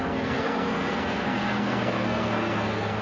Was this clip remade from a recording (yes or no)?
yes